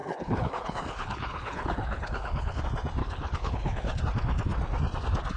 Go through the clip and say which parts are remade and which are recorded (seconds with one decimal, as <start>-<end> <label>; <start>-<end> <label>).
0.0-2.6 remade; 2.6-3.0 recorded; 3.0-4.0 remade; 4.0-5.4 recorded